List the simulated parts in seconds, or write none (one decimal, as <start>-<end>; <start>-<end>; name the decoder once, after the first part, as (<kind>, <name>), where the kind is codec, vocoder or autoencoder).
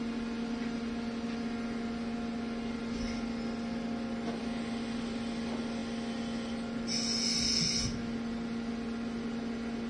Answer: none